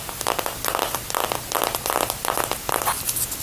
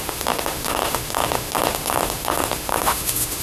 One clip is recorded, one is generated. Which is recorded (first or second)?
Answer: first